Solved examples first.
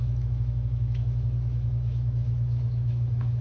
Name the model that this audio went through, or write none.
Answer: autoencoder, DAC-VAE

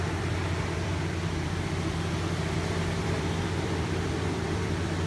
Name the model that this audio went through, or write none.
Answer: vocoder, BigVGAN v2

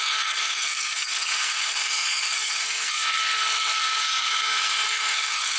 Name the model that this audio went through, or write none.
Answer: codec, SNAC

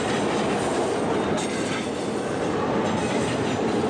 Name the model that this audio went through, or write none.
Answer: none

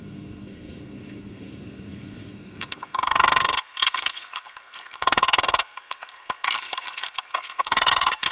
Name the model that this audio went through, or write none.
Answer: codec, SNAC